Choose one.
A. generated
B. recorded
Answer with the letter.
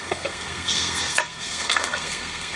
A